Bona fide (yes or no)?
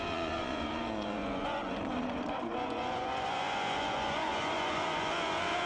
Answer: no